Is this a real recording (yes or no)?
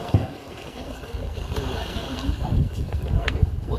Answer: no